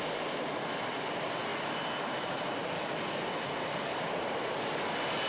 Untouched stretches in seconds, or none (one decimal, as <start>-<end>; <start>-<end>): 0.0-5.3